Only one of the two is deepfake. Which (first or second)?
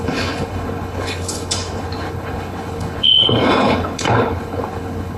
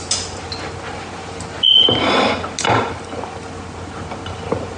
first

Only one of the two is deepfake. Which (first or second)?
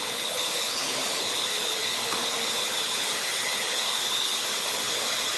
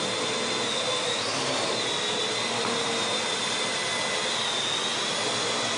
first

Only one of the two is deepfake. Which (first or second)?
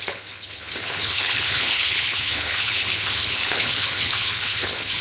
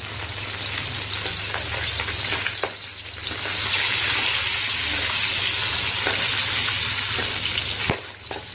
first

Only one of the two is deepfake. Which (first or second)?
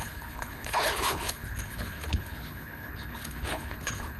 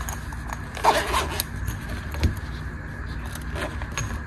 first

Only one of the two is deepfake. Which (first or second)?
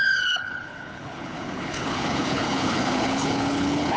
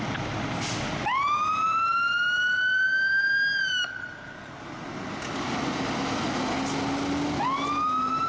first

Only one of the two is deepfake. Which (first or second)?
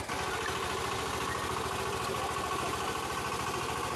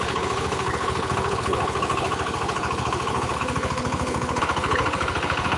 second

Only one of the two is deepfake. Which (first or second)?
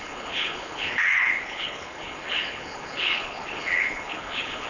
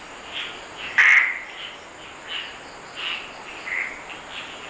first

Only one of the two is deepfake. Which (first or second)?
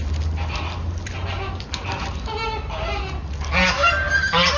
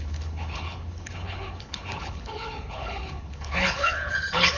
second